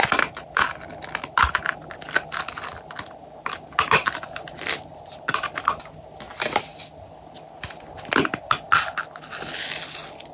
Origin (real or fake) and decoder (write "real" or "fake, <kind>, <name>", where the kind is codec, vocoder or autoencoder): real